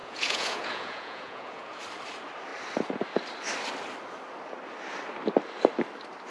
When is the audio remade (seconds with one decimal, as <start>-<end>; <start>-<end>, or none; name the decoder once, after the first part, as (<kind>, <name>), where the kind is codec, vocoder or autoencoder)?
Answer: 0.0-1.8 (vocoder, Vocos)